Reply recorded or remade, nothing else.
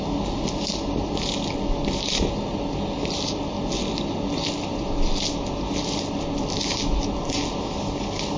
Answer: recorded